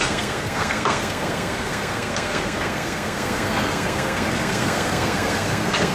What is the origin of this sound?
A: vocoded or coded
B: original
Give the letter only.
A